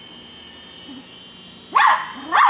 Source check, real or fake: real